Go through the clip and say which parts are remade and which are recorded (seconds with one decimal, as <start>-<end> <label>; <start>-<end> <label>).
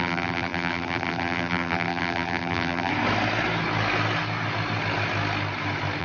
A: 0.0-2.9 remade; 2.9-6.0 recorded